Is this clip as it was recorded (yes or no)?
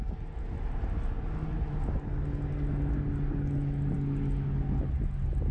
yes